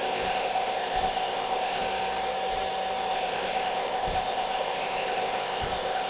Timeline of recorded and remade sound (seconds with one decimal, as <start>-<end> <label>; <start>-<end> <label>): 0.0-1.8 remade; 1.8-3.1 recorded; 3.1-6.1 remade